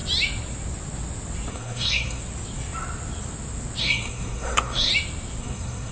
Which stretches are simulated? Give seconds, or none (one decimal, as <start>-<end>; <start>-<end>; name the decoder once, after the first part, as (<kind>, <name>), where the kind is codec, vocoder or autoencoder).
1.5-2.2 (codec, SNAC); 3.8-4.9; 5.4-5.9